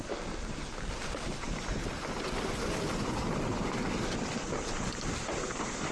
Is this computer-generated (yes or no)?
no